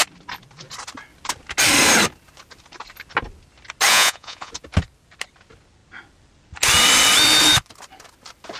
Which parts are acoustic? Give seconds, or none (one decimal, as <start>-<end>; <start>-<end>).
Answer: 0.0-3.9; 4.5-8.6